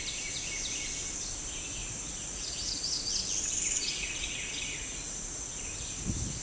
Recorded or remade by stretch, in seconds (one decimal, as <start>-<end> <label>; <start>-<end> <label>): 0.0-1.8 recorded; 1.8-3.0 remade; 3.0-3.8 recorded; 3.8-5.6 remade; 5.6-6.4 recorded